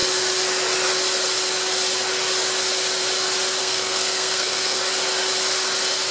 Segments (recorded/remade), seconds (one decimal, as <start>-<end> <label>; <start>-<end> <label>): 0.0-3.6 recorded; 3.6-4.8 remade; 4.8-6.1 recorded